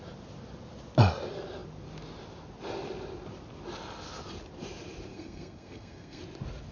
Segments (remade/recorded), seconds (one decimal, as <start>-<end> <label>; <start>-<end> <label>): 0.0-5.1 recorded; 5.1-6.2 remade; 6.2-6.7 recorded